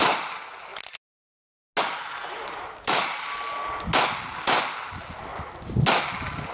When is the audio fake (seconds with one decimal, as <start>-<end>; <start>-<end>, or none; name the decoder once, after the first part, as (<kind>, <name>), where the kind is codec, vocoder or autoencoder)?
2.2-3.0 (vocoder, BigVGAN v2)